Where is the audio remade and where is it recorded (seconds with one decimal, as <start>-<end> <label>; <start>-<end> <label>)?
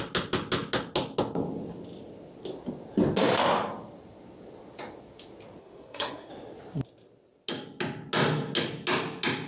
0.0-5.6 recorded; 5.6-6.3 remade; 6.3-9.5 recorded